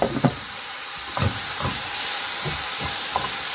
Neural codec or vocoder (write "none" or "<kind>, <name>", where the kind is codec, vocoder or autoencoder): none